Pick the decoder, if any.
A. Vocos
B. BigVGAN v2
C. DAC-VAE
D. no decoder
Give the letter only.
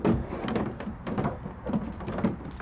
D